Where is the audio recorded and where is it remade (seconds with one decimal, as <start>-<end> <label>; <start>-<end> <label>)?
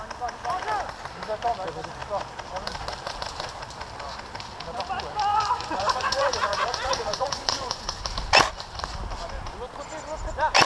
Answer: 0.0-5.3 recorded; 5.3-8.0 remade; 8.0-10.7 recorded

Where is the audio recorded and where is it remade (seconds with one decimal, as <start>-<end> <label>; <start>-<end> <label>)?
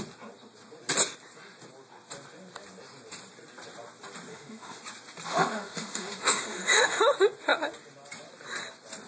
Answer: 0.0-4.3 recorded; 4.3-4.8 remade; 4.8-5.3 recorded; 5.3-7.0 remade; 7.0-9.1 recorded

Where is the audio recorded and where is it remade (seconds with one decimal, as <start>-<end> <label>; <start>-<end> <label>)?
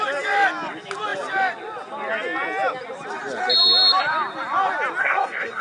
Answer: 0.0-5.0 recorded; 5.0-5.6 remade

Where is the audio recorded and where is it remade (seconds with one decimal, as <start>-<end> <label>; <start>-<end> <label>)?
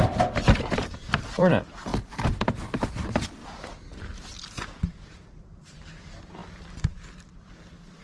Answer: 0.0-3.4 remade; 3.4-5.1 recorded; 5.1-8.0 remade